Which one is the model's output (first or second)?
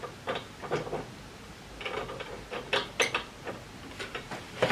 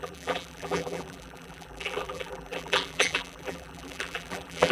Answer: second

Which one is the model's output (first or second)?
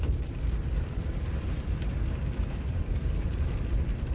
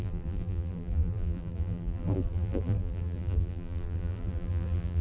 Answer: second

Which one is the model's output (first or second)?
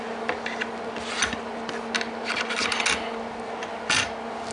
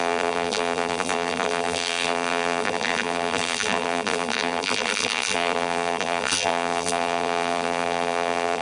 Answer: second